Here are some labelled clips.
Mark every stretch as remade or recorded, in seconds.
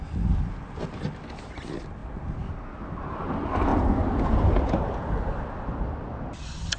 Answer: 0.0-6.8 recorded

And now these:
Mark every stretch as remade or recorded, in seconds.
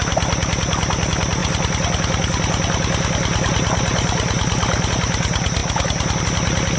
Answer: 0.0-6.8 recorded